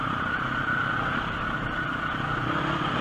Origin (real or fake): real